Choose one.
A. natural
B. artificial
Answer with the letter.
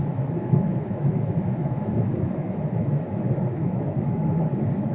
B